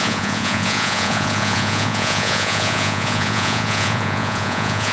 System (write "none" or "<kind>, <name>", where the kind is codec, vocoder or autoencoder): vocoder, Vocos